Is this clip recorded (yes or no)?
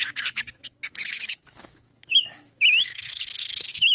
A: no